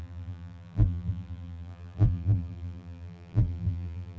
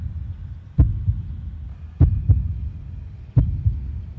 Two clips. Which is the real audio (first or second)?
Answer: second